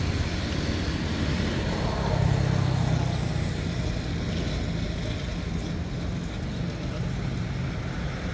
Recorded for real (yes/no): yes